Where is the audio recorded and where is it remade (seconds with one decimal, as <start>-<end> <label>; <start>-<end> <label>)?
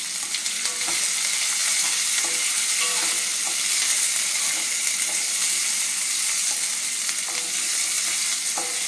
0.0-8.9 recorded